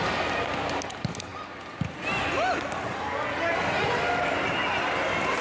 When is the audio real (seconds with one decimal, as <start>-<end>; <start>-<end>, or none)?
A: 0.0-5.4